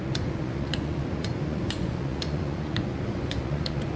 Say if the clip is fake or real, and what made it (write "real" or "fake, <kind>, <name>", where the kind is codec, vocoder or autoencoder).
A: fake, vocoder, Vocos